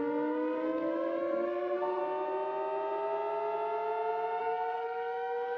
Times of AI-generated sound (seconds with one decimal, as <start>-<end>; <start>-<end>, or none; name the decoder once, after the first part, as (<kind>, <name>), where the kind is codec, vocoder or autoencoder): 0.0-2.0 (codec, SNAC); 4.4-5.6